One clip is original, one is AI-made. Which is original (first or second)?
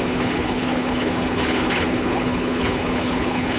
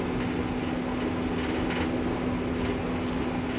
second